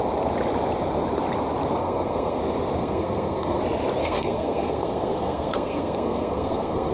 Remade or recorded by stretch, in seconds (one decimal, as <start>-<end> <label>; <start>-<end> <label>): 0.0-1.8 recorded; 1.8-2.4 remade; 2.4-2.8 recorded; 2.8-3.6 remade; 3.6-4.0 recorded; 4.0-6.9 remade